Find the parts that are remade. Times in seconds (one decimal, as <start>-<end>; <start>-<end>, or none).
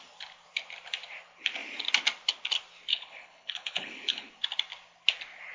2.9-4.3